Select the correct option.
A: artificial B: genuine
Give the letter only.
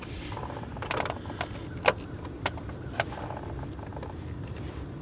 B